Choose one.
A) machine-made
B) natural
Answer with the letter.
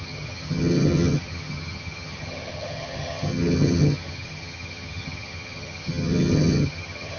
A